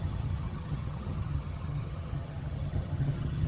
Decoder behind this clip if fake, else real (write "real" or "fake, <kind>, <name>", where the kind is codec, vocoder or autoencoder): fake, vocoder, HiFi-GAN